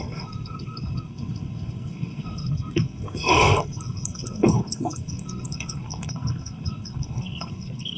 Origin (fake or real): fake